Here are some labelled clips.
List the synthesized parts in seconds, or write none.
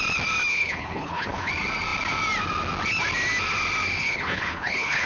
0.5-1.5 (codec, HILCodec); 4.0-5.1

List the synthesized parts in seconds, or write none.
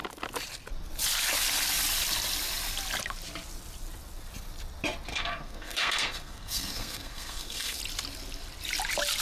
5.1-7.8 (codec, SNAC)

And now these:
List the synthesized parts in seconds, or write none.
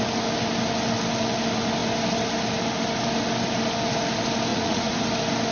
4.5-5.0 (vocoder, Vocos)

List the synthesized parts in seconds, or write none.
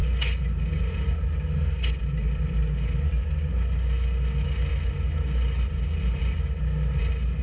none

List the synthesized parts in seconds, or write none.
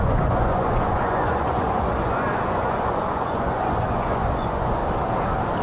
0.0-4.8 (vocoder, Vocos)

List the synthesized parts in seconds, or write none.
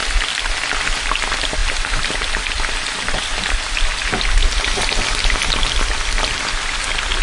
none